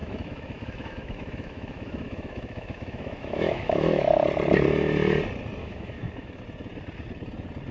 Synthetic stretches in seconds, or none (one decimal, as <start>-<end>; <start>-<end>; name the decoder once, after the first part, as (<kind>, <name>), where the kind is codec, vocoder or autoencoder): 0.0-4.1 (autoencoder, DAC-VAE); 5.6-6.4